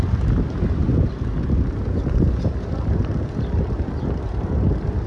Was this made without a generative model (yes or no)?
yes